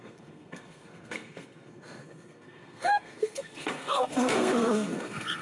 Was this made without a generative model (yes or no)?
no